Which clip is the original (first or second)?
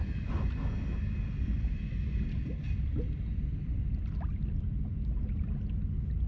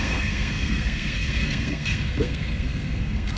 first